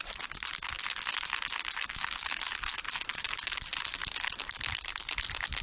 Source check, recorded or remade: recorded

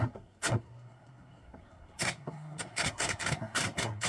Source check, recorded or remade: remade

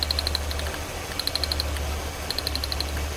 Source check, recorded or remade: recorded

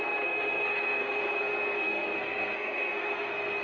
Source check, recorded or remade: remade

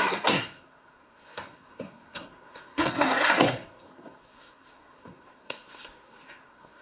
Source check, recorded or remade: remade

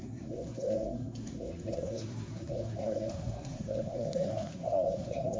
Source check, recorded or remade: remade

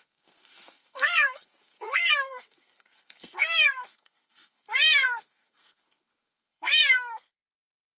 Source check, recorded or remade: remade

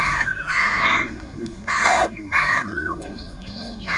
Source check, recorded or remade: remade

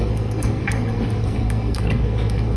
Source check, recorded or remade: remade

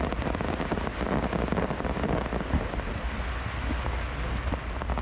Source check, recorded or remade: recorded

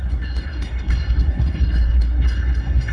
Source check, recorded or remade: remade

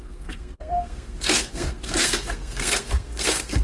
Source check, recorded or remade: remade